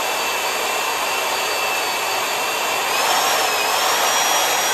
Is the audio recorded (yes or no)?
yes